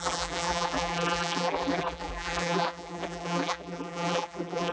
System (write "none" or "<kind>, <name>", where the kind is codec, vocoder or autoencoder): vocoder, BigVGAN v2